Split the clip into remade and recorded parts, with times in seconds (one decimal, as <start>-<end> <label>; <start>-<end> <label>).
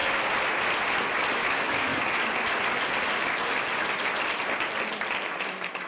0.0-1.4 recorded; 1.4-1.9 remade; 1.9-5.4 recorded; 5.4-5.9 remade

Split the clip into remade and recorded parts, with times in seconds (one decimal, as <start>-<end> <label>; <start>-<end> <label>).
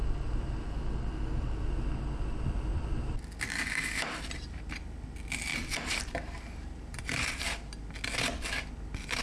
0.0-5.5 recorded; 5.5-7.4 remade; 7.4-9.2 recorded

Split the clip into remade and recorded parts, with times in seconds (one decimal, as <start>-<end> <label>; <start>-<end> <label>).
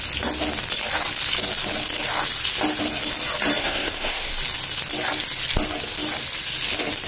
0.0-3.6 recorded; 3.6-4.3 remade; 4.3-7.1 recorded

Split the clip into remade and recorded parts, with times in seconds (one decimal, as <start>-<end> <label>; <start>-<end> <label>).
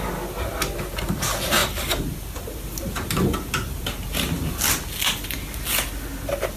0.0-1.6 recorded; 1.6-5.6 remade; 5.6-6.6 recorded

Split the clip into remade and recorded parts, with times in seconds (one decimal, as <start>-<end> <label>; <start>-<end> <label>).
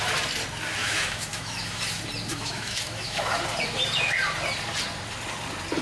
0.0-0.8 recorded; 0.8-1.8 remade; 1.8-2.3 recorded; 2.3-3.4 remade; 3.4-5.8 recorded